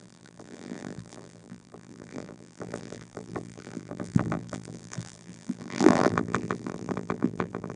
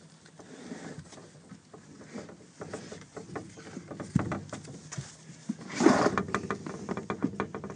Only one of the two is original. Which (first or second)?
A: second